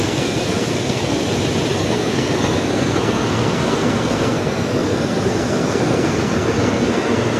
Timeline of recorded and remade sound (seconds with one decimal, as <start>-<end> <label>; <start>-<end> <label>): 0.0-1.2 remade; 1.2-1.8 recorded; 1.8-7.4 remade